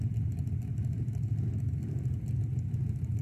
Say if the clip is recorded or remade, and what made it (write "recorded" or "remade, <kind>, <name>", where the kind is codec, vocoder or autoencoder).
recorded